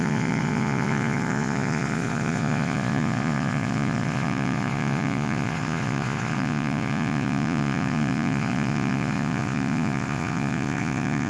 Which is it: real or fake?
fake